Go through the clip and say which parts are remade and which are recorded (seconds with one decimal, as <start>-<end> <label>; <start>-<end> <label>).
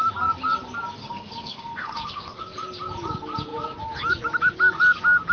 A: 0.0-1.0 recorded; 1.0-2.4 remade; 2.4-5.3 recorded